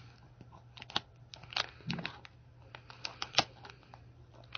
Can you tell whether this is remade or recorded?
recorded